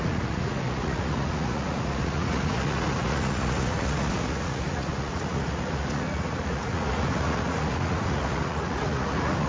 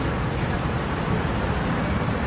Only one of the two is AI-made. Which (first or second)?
first